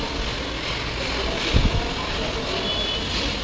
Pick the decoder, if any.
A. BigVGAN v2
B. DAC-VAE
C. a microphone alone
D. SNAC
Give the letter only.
C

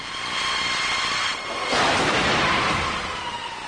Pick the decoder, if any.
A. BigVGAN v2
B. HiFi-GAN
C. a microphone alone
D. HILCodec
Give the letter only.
C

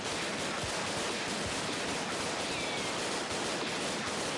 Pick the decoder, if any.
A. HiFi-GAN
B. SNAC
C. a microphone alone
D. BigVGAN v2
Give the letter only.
C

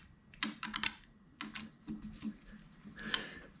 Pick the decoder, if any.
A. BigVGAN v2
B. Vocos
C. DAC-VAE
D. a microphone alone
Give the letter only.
D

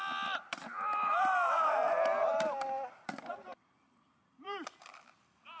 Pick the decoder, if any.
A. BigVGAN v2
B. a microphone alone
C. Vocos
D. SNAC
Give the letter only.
A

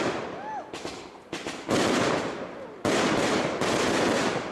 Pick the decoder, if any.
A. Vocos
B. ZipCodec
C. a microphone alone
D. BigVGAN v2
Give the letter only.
C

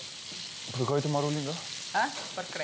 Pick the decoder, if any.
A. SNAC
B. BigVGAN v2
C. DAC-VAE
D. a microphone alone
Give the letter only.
D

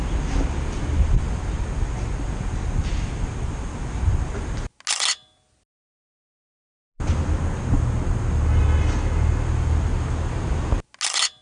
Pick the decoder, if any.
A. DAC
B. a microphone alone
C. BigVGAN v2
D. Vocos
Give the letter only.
B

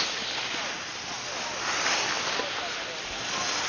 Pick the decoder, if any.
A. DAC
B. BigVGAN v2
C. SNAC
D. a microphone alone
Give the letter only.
D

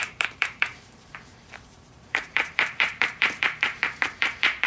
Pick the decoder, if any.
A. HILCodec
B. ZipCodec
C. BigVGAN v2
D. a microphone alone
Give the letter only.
C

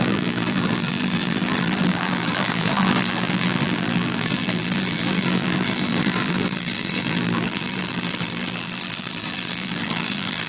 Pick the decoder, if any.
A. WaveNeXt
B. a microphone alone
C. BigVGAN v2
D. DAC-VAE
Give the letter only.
C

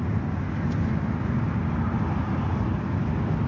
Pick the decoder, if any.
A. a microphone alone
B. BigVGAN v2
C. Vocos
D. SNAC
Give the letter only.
A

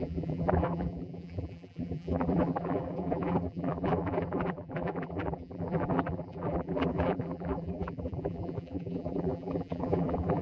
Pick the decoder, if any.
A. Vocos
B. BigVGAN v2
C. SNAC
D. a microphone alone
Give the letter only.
B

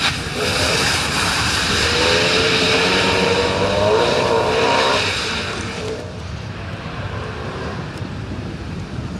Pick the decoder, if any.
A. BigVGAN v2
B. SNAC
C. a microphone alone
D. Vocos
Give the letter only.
A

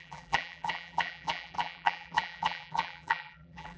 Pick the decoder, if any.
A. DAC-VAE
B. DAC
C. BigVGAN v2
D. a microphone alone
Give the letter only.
C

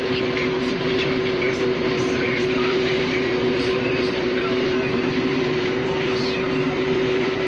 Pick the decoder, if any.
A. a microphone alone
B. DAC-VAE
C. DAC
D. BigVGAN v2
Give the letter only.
D